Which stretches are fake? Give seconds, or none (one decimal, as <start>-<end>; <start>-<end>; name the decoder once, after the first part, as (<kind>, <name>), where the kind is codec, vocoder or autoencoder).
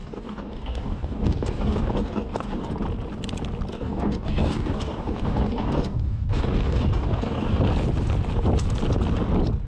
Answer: 0.0-2.7 (codec, DAC); 3.7-7.6